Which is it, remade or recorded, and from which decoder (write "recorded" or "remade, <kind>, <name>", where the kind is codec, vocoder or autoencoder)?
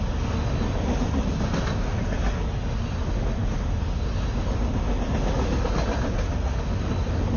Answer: recorded